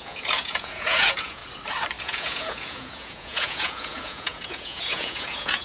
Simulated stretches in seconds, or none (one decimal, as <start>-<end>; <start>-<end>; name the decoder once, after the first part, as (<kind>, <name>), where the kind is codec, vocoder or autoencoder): 0.0-1.4 (vocoder, Vocos); 2.0-5.6